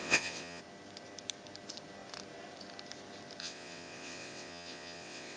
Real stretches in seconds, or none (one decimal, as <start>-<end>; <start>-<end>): 0.6-3.4